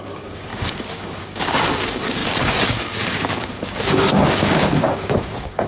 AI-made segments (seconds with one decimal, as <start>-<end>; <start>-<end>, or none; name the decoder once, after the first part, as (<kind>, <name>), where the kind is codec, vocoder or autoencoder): 0.0-5.7 (codec, DAC)

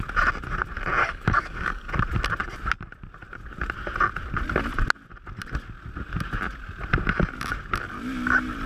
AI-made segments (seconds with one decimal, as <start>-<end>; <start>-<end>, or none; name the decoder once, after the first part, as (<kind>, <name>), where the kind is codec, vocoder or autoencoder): 1.0-1.9 (codec, DAC)

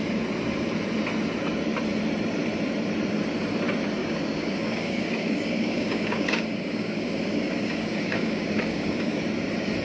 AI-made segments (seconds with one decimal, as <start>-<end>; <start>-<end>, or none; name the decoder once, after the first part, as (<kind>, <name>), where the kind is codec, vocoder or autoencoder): 4.0-9.2 (codec, DAC)

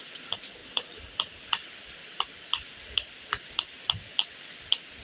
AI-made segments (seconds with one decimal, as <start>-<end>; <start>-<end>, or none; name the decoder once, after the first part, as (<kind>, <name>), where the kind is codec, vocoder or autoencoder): none

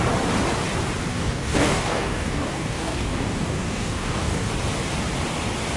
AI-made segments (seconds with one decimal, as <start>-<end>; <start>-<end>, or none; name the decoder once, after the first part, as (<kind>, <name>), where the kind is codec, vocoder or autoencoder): 1.1-4.5 (codec, DAC)

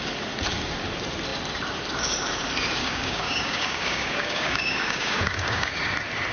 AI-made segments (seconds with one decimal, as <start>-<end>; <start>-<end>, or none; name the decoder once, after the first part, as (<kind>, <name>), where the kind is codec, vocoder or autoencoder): 2.8-5.7 (codec, DAC)